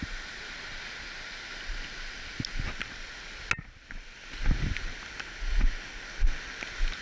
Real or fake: real